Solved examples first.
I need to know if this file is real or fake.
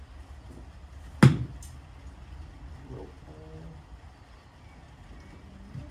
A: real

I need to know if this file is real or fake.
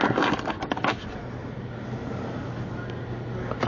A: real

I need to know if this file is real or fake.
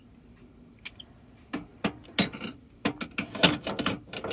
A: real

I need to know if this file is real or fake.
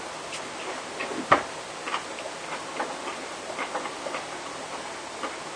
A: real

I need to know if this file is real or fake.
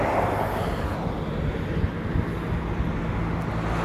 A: real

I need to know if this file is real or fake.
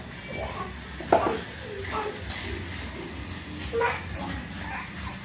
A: real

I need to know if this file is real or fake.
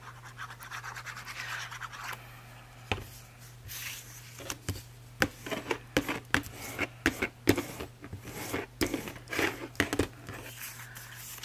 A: real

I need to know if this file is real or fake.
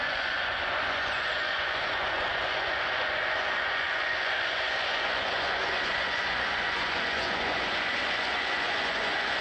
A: fake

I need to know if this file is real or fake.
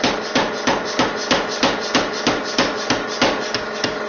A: real